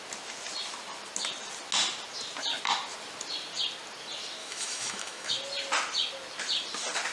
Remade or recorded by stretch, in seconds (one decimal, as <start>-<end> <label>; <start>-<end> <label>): 0.0-4.4 recorded; 4.4-5.3 remade; 5.3-7.1 recorded